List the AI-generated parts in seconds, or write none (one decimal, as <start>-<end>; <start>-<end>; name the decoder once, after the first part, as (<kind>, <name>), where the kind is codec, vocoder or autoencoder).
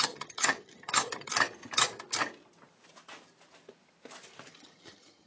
0.0-1.3 (vocoder, HiFi-GAN); 4.5-5.3